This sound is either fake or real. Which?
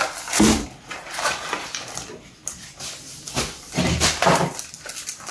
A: real